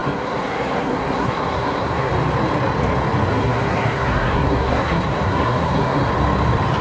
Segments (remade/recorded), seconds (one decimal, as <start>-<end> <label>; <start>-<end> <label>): 0.0-2.1 remade; 2.1-3.3 recorded; 3.3-6.0 remade; 6.0-6.8 recorded